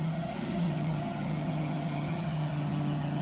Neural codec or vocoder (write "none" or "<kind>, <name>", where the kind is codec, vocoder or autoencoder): vocoder, HiFi-GAN